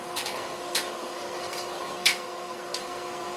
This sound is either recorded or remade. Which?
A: remade